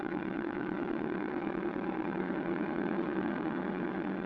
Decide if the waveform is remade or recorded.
remade